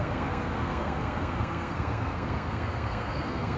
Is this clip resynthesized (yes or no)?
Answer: yes